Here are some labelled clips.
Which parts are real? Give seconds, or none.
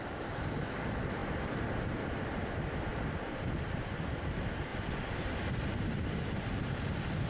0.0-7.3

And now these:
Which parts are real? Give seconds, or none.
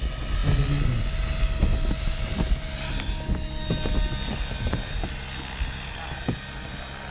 0.0-7.1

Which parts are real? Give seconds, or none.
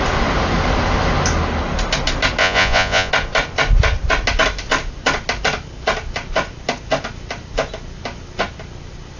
0.0-2.4; 3.1-9.2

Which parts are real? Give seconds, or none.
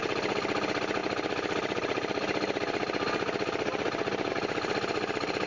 0.0-1.0; 4.3-5.5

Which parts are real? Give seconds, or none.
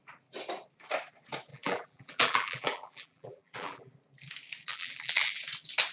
0.0-1.5; 3.9-4.7; 5.4-5.9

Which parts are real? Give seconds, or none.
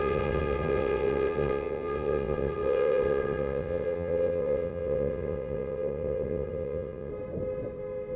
7.1-8.2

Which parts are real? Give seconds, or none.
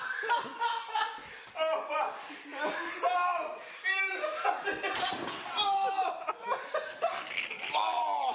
0.0-8.3